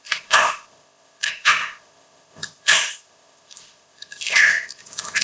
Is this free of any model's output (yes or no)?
no